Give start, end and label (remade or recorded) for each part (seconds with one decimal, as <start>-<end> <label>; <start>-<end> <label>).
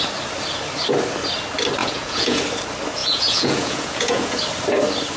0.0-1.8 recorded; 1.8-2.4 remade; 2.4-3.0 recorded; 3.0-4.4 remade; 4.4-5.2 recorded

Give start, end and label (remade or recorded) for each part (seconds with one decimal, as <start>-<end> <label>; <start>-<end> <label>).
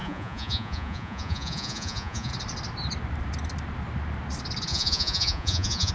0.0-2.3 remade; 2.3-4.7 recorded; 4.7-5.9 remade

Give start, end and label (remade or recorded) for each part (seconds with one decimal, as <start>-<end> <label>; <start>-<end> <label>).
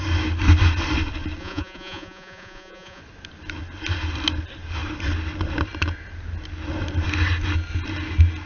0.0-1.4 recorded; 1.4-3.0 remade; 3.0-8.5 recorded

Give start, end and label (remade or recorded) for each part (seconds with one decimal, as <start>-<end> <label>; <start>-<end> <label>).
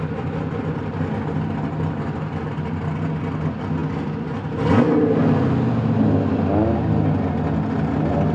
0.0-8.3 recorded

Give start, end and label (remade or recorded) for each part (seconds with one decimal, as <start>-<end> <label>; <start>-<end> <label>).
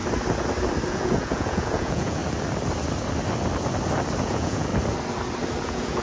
0.0-0.9 recorded; 0.9-2.2 remade; 2.2-4.2 recorded; 4.2-4.7 remade; 4.7-5.6 recorded; 5.6-6.0 remade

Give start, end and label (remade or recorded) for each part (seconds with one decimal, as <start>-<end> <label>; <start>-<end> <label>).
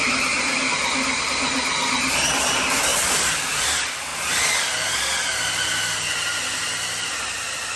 0.0-7.8 recorded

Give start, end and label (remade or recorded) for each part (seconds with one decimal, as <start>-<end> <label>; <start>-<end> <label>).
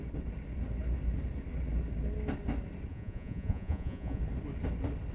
0.0-2.9 recorded; 2.9-4.2 remade; 4.2-5.1 recorded